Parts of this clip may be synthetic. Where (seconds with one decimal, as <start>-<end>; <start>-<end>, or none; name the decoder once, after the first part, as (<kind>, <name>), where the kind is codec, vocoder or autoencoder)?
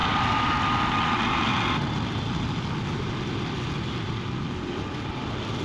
none